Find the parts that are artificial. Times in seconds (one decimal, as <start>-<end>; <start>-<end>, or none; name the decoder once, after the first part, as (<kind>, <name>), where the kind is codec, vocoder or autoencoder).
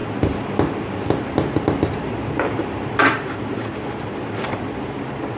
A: none